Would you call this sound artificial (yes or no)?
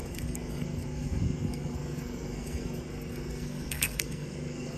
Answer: yes